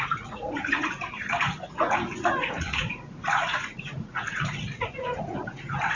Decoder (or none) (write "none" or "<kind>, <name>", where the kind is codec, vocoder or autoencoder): vocoder, Vocos